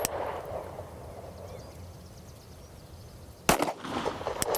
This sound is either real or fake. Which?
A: real